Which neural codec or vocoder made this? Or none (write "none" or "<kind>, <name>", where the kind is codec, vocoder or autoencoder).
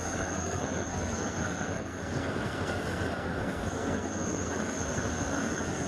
codec, SNAC